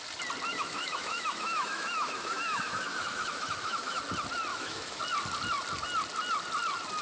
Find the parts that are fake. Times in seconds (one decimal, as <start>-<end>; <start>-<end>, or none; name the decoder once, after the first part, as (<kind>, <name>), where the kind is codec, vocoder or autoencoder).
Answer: 0.5-4.0 (autoencoder, DAC-VAE); 4.5-5.0